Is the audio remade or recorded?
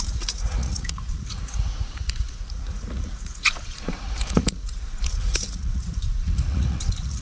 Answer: remade